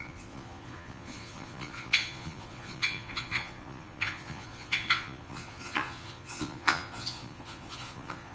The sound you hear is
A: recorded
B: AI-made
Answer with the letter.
B